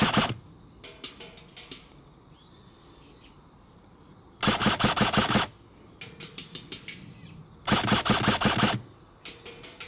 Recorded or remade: recorded